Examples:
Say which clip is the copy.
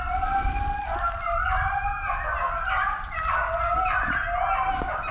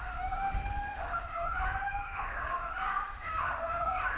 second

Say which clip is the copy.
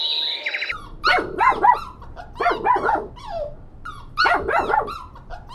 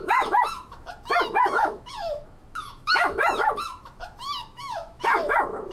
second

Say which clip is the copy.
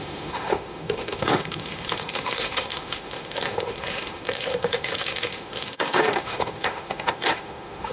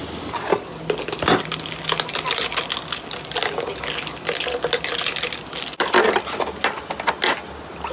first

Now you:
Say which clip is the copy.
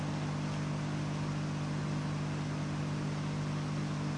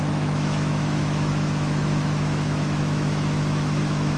second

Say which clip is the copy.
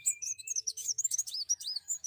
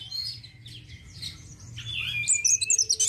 first